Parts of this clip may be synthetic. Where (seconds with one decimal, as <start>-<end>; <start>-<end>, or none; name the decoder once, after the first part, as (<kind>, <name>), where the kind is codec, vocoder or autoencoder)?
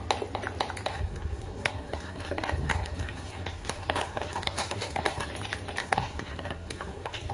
0.9-5.3 (codec, SNAC); 5.8-7.3